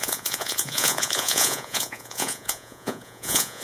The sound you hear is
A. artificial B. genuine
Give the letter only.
A